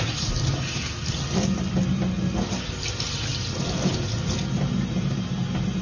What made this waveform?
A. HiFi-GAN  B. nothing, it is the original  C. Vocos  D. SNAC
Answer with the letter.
B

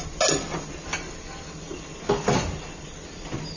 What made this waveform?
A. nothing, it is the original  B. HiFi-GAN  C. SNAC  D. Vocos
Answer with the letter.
A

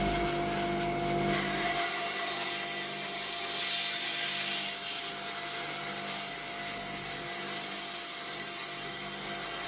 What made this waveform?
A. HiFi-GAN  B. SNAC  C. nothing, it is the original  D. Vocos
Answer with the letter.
C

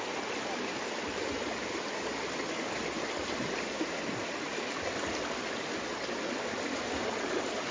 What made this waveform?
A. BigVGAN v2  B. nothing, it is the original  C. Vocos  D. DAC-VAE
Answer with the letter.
B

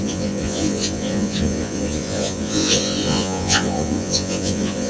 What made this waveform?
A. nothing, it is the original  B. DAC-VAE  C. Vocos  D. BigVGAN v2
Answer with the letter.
C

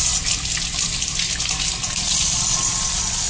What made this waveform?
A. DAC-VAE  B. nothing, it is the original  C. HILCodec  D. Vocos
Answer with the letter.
B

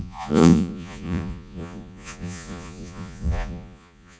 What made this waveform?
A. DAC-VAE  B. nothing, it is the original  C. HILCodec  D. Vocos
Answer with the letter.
D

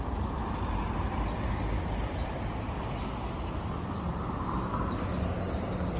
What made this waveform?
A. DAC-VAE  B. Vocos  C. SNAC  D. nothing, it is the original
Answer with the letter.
D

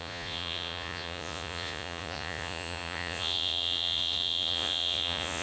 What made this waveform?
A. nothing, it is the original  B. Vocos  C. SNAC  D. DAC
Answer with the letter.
B